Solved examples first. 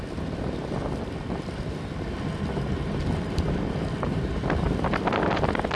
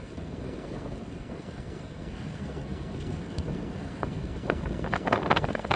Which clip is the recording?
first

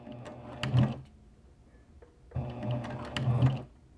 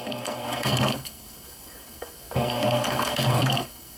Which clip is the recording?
first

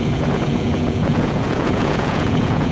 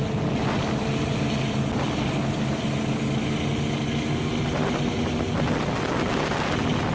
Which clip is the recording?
second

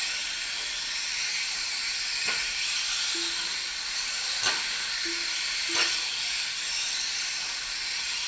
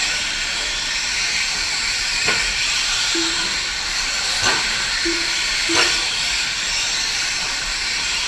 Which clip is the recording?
first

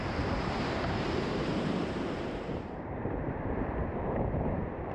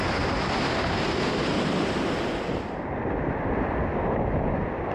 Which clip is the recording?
second